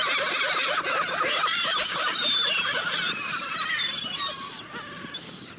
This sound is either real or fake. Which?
real